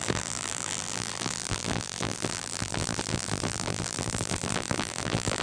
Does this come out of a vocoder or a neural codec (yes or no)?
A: yes